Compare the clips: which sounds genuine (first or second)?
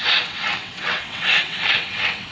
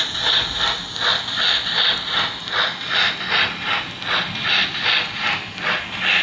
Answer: second